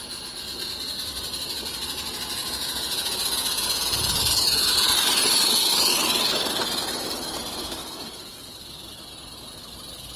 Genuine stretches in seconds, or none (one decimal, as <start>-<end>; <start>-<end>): 0.0-2.4; 4.9-7.8; 8.5-10.2